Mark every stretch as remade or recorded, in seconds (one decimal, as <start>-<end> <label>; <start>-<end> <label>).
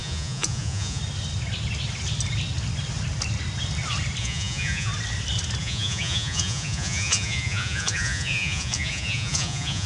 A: 0.0-1.0 remade; 1.0-4.2 recorded; 4.2-4.9 remade; 4.9-5.6 recorded; 5.6-9.9 remade